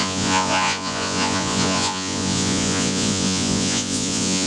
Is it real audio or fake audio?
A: fake